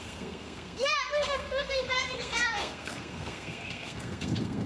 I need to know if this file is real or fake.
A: fake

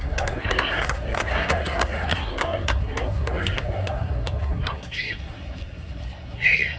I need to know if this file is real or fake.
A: fake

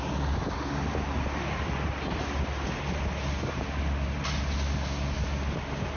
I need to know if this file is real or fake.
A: real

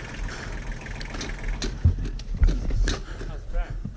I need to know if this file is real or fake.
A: real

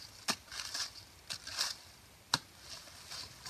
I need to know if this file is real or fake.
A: real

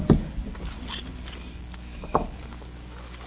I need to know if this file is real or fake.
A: real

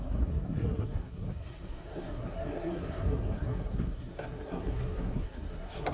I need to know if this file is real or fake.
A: fake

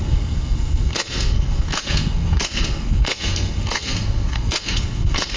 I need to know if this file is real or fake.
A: fake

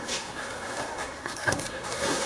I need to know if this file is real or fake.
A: fake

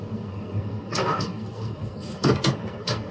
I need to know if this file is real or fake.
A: fake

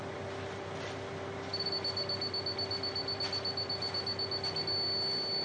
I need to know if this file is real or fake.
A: real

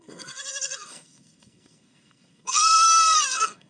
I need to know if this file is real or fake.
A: fake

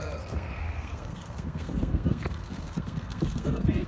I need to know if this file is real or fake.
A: fake